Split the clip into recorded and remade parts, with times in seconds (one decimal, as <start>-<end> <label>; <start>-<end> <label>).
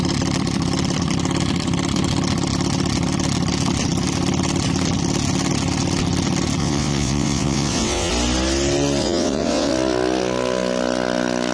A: 0.0-6.6 recorded; 6.6-8.1 remade; 8.1-9.0 recorded; 9.0-9.7 remade; 9.7-11.5 recorded